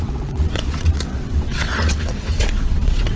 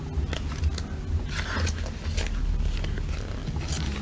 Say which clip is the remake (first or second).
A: first